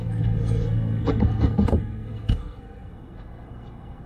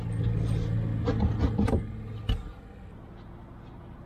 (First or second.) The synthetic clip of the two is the first